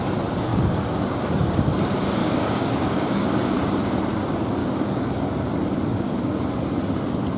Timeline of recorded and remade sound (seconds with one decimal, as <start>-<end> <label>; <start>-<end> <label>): 0.0-0.5 recorded; 0.5-1.4 remade; 1.4-2.2 recorded; 2.2-3.6 remade; 3.6-4.6 recorded; 4.6-5.5 remade; 5.5-5.9 recorded; 5.9-6.5 remade; 6.5-7.4 recorded

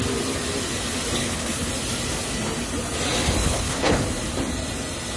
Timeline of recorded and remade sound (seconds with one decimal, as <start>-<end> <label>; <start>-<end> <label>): 0.0-1.2 recorded; 1.2-1.7 remade; 1.7-3.4 recorded; 3.4-4.0 remade; 4.0-5.2 recorded